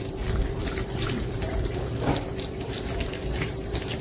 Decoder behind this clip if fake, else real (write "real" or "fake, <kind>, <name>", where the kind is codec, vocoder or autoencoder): fake, vocoder, BigVGAN v2